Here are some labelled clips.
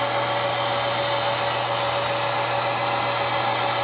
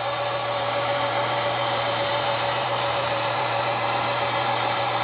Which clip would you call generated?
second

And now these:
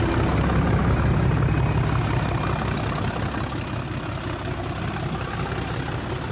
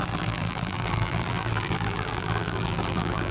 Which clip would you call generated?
second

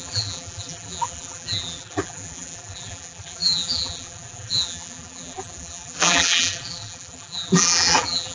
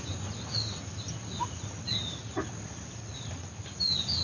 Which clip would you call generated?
first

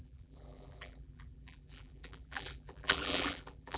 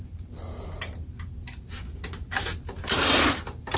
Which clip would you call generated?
first